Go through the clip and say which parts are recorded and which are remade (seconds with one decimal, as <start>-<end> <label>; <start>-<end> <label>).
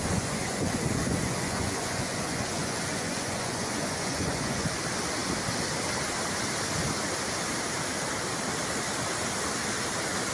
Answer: 0.0-4.7 remade; 4.7-10.3 recorded